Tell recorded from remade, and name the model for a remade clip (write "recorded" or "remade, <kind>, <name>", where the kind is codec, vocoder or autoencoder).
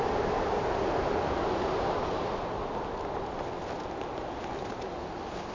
recorded